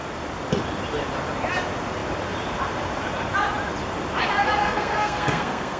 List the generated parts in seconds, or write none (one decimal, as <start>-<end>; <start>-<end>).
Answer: 4.6-5.8